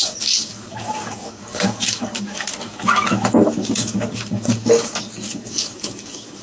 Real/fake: fake